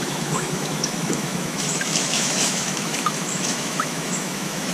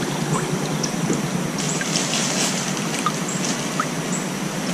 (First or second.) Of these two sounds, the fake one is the first